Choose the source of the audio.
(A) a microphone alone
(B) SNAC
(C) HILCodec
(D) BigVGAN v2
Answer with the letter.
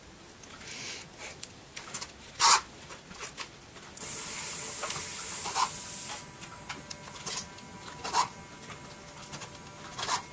A